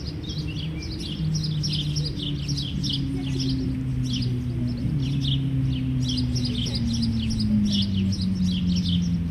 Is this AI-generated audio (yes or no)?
no